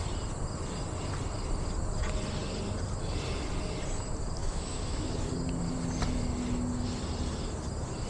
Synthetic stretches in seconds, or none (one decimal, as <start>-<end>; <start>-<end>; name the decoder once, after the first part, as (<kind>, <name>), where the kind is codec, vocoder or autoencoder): 4.4-5.1 (autoencoder, DAC-VAE)